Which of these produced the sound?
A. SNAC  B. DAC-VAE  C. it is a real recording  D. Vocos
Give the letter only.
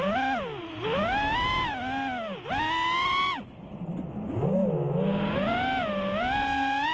C